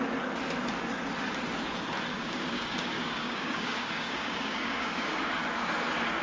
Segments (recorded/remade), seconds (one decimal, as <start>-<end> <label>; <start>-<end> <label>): 0.0-2.1 recorded; 2.1-5.3 remade; 5.3-6.2 recorded